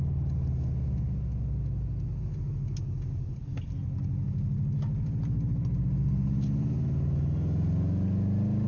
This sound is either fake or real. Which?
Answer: real